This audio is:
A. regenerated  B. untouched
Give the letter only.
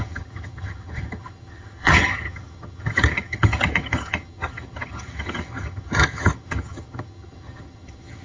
A